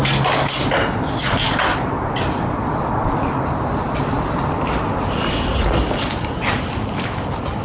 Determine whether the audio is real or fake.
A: real